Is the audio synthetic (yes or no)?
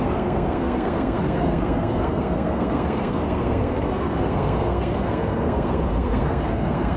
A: yes